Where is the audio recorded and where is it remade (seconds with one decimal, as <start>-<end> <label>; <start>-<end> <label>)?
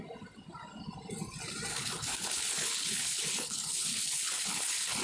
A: 0.0-1.7 recorded; 1.7-5.0 remade